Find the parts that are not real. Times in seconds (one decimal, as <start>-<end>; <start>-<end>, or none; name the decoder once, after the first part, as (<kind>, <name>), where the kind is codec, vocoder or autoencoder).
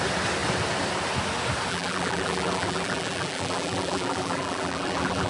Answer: 1.7-5.3 (vocoder, BigVGAN v2)